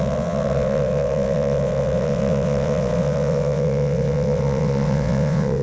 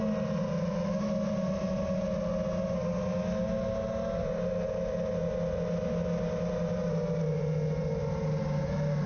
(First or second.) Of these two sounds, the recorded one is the second